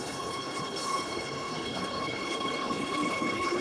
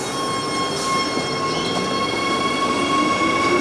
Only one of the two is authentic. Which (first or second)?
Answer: second